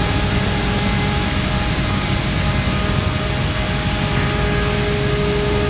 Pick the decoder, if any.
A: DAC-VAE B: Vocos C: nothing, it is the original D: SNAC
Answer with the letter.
C